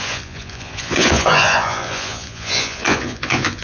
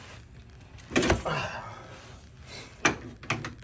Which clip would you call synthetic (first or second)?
first